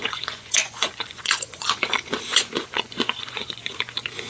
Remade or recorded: remade